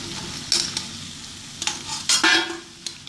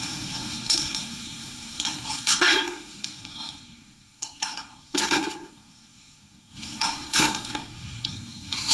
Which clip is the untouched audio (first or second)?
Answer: first